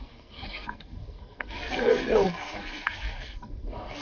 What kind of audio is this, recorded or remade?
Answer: remade